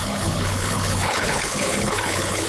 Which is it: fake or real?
fake